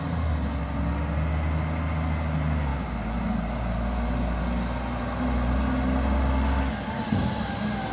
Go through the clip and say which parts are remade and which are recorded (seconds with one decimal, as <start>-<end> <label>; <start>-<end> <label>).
0.0-7.9 recorded